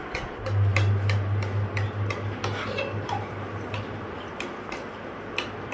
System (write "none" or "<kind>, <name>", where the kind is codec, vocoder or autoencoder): none